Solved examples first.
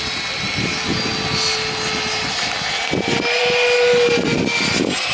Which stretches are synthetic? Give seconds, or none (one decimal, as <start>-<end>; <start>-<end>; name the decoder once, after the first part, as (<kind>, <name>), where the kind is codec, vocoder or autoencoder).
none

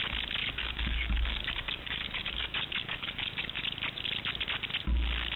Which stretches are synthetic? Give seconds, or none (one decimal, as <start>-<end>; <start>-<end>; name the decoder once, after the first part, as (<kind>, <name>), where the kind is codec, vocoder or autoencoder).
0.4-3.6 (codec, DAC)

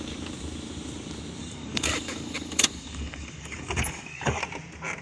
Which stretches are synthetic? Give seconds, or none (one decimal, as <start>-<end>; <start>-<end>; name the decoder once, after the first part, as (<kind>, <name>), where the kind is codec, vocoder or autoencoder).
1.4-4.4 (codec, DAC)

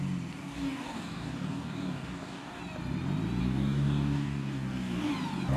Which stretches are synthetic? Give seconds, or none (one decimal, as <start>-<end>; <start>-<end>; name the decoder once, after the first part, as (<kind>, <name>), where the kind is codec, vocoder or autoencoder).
0.4-2.6 (codec, DAC); 3.4-5.1

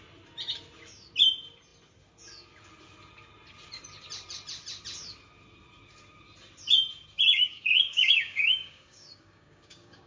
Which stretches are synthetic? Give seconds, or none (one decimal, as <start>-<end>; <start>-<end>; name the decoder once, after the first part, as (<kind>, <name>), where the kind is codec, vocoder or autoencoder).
7.3-10.1 (codec, DAC)